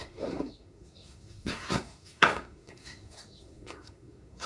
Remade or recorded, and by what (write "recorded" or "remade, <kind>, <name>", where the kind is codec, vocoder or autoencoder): remade, codec, SNAC